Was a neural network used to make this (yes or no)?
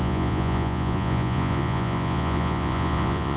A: yes